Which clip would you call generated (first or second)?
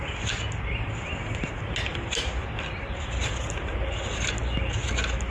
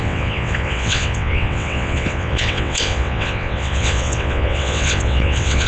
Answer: second